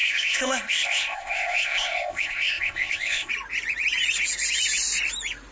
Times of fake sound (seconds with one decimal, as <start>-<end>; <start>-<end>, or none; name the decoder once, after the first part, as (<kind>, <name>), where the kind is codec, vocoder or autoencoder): 0.0-3.3 (codec, ZipCodec)